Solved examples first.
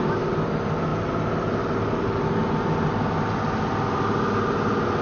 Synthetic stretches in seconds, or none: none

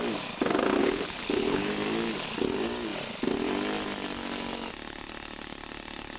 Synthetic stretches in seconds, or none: 0.8-1.7 (codec, HILCodec)

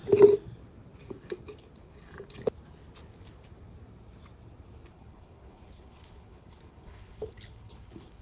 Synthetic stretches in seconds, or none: 4.9-8.2 (codec, HILCodec)

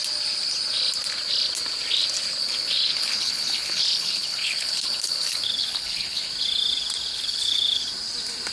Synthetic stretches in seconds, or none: 2.4-6.3 (codec, HILCodec); 7.1-7.8

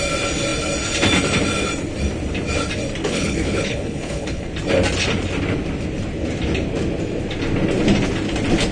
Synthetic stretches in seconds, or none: 3.0-4.5 (codec, HILCodec)